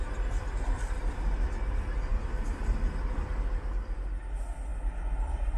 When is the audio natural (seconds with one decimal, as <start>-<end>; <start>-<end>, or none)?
0.0-5.6